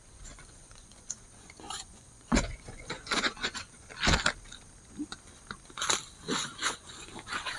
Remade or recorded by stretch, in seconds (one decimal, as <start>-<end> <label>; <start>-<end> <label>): 0.0-3.9 remade; 3.9-6.2 recorded; 6.2-7.6 remade